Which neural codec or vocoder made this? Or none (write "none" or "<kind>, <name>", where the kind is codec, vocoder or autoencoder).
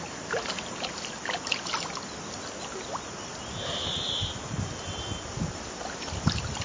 none